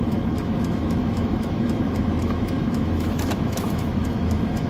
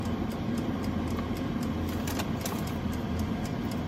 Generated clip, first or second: first